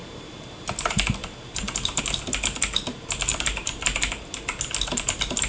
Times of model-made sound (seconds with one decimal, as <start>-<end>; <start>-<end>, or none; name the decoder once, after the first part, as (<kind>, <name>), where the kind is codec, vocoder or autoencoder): 0.0-0.7 (vocoder, BigVGAN v2); 1.2-2.0; 3.3-4.1